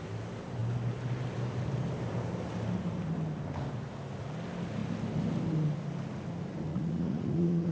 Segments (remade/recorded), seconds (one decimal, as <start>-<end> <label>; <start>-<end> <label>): 0.0-6.7 recorded; 6.7-7.7 remade